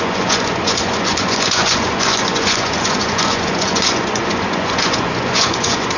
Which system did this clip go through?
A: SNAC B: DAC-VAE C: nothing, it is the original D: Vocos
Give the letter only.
D